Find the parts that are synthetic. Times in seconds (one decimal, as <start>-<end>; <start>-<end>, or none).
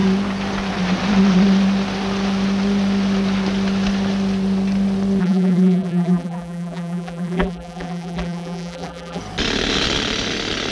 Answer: 5.2-9.2